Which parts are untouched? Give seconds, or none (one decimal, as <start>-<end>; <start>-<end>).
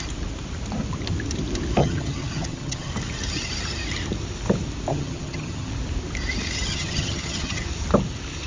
0.0-1.8; 2.9-4.9; 5.7-6.7; 7.6-8.5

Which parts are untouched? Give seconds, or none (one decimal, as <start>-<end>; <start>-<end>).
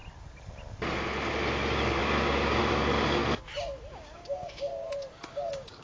0.0-2.0; 2.6-3.9; 4.7-5.3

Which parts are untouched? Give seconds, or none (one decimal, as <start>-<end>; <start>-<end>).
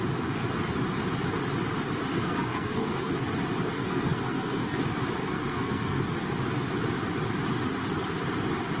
0.0-2.1; 3.1-3.7; 4.8-5.2; 6.0-8.8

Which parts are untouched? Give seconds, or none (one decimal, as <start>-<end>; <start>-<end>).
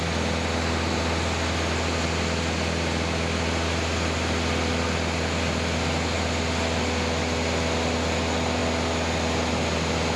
0.0-10.2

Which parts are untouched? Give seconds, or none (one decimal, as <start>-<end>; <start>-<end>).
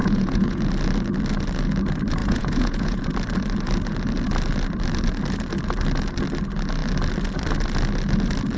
0.6-2.2; 3.0-8.6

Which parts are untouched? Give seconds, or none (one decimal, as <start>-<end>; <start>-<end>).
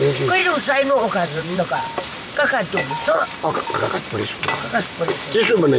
0.0-0.4; 3.9-5.8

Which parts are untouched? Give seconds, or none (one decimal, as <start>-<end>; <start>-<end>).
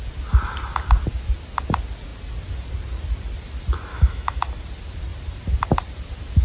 0.0-3.9; 4.4-6.4